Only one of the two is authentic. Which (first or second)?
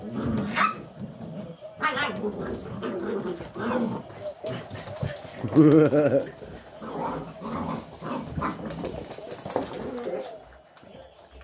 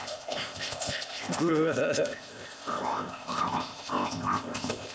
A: first